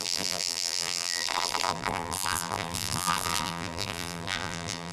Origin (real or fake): fake